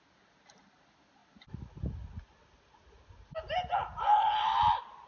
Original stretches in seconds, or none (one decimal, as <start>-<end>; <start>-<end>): 0.0-5.1